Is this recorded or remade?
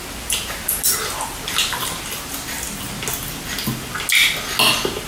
recorded